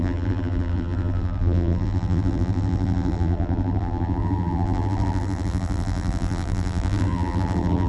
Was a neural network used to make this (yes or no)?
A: yes